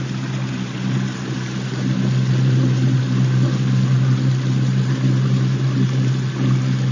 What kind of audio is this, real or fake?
real